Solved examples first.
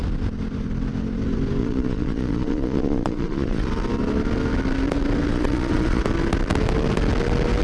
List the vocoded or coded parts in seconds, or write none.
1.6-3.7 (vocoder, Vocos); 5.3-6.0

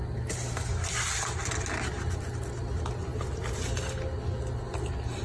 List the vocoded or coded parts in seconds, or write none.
none

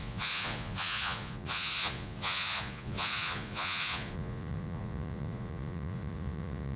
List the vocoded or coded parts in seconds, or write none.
0.0-6.8 (vocoder, Vocos)

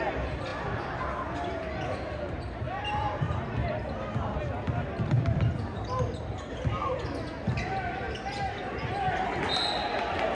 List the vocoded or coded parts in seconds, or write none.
none

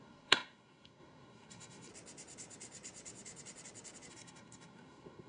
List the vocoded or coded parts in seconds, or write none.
0.0-1.9 (codec, SNAC); 4.1-5.3